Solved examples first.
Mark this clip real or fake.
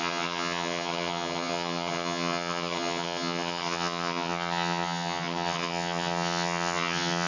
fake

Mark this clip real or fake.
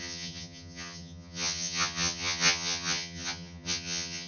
fake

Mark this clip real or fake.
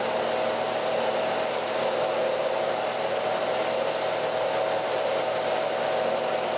real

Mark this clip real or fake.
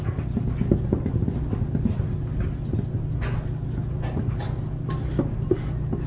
real